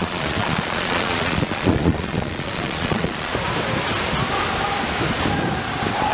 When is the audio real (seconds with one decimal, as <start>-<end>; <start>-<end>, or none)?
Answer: 3.3-6.1